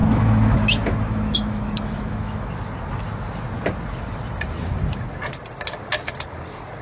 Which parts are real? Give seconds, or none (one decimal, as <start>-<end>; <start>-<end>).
2.5-6.8